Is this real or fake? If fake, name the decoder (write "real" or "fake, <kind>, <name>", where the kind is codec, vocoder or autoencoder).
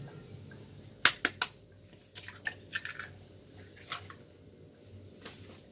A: real